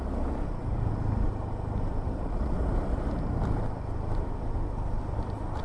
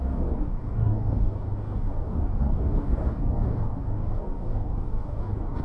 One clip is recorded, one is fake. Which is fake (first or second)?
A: second